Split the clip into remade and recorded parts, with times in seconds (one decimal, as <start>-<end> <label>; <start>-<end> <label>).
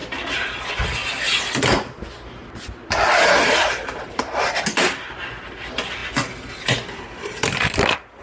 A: 0.0-0.7 remade; 0.7-8.2 recorded